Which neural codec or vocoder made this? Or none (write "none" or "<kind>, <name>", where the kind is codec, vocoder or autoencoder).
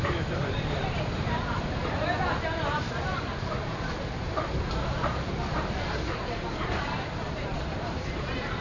vocoder, BigVGAN v2